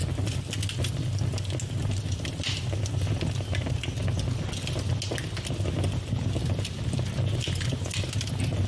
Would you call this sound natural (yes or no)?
yes